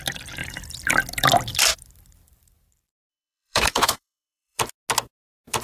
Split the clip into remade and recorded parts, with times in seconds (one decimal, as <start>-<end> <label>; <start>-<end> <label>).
0.0-3.1 recorded; 3.1-4.6 remade; 4.6-5.6 recorded